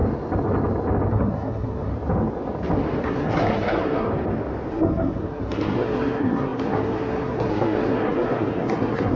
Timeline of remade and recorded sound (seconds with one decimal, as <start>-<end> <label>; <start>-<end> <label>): 0.0-1.1 recorded; 1.1-1.9 remade; 1.9-3.0 recorded; 3.0-4.1 remade; 4.1-4.7 recorded; 4.7-9.2 remade